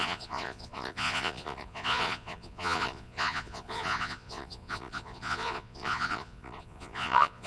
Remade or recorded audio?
remade